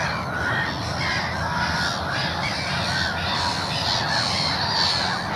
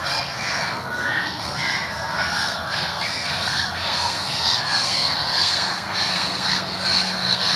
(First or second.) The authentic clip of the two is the first